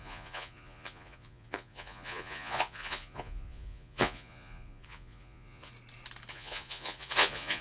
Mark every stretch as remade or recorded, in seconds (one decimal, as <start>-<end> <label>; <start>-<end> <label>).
0.0-5.7 remade; 5.7-6.3 recorded; 6.3-7.6 remade

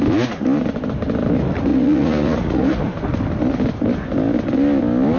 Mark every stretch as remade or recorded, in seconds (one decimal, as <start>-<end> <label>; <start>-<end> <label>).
0.0-1.7 recorded; 1.7-2.8 remade; 2.8-5.2 recorded

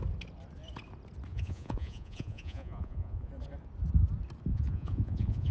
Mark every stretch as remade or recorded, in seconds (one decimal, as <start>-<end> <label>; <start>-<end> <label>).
0.0-1.3 recorded; 1.3-3.3 remade; 3.3-4.5 recorded; 4.5-5.5 remade

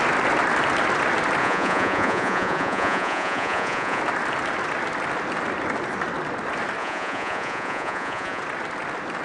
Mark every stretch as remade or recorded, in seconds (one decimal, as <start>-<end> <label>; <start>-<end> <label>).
0.0-1.4 recorded; 1.4-4.0 remade; 4.0-6.8 recorded; 6.8-8.4 remade; 8.4-9.2 recorded

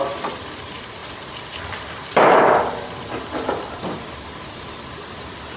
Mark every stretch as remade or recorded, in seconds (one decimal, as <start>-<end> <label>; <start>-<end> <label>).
0.0-5.6 recorded

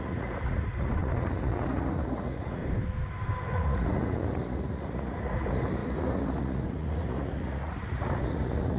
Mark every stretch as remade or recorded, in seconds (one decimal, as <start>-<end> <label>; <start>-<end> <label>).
0.0-2.6 remade; 2.6-3.4 recorded; 3.4-8.8 remade